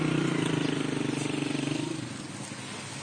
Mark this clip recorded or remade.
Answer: remade